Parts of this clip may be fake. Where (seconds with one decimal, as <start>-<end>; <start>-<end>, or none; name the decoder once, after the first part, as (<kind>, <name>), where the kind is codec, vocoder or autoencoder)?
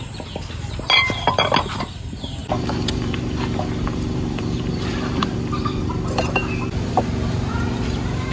2.4-7.0 (vocoder, BigVGAN v2)